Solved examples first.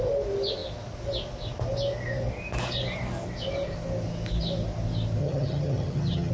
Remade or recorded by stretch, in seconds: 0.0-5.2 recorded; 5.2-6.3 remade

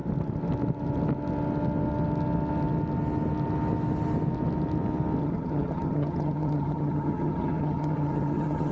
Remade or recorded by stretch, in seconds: 0.0-5.2 recorded; 5.2-8.7 remade

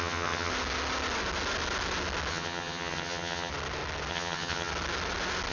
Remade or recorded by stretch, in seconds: 0.0-0.5 remade; 0.5-2.3 recorded; 2.3-3.5 remade; 3.5-4.1 recorded; 4.1-4.7 remade; 4.7-5.5 recorded

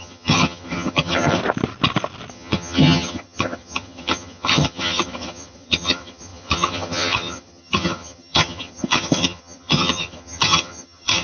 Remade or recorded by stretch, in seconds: 0.0-1.4 remade; 1.4-2.3 recorded; 2.3-11.2 remade